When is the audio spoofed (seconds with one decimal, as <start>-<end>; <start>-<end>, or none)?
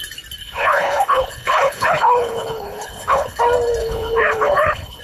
0.4-3.4; 3.8-5.0